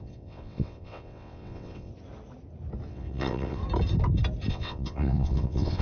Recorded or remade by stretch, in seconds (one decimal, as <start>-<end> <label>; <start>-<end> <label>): 0.0-1.9 remade; 1.9-2.9 recorded; 2.9-3.6 remade; 3.6-4.5 recorded; 4.5-5.8 remade